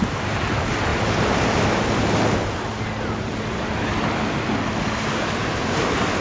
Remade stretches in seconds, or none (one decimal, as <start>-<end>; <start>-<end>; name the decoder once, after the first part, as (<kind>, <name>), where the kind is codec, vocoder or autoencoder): none